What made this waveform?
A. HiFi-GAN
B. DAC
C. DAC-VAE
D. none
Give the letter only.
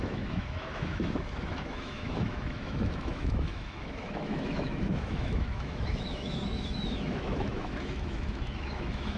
C